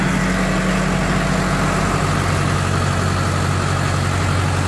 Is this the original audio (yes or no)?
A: yes